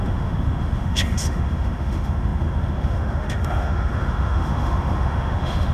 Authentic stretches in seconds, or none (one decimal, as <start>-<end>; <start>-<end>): none

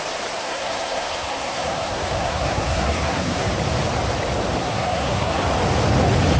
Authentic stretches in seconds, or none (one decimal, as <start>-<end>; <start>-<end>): 0.0-0.4; 3.5-4.6; 5.4-6.4

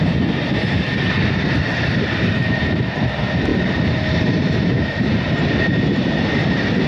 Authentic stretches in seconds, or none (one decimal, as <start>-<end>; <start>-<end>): 0.9-1.6; 3.5-4.1